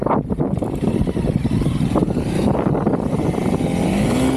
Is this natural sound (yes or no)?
yes